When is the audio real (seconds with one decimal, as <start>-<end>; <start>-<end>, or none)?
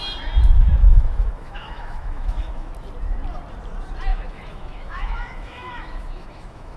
0.0-0.8; 2.7-4.1